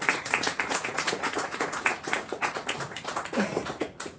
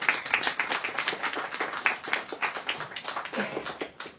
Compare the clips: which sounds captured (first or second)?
second